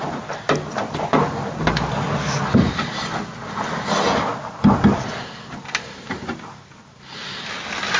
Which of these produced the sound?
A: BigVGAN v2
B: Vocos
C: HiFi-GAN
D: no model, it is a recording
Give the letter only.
D